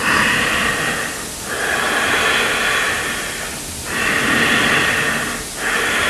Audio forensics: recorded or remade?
recorded